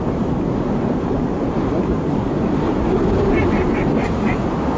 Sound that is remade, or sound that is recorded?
remade